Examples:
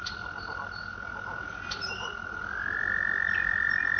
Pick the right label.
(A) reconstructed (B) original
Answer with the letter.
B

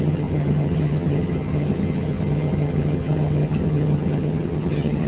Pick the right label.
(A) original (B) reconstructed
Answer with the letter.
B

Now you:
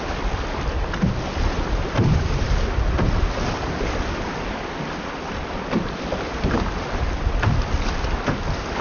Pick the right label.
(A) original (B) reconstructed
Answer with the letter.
A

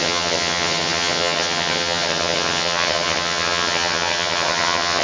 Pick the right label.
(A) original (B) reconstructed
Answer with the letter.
B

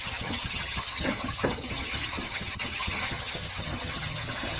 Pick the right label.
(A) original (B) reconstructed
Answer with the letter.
B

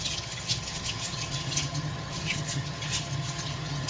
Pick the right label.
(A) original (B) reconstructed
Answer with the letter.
B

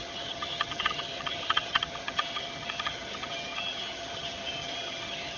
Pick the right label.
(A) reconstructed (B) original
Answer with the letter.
A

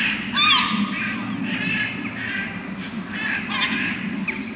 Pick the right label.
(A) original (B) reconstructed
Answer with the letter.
A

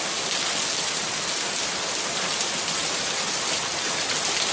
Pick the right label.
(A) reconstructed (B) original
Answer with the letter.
B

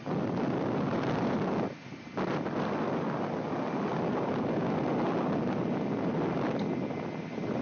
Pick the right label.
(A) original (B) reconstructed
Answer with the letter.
A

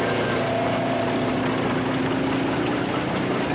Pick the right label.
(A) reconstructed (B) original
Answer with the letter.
B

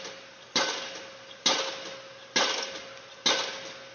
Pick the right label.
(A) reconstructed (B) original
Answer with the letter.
B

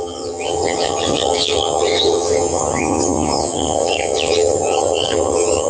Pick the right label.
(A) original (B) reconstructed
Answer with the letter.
B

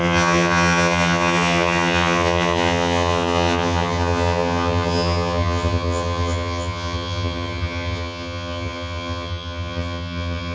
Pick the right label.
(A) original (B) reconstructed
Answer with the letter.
B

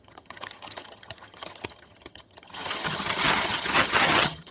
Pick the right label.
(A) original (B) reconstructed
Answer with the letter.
B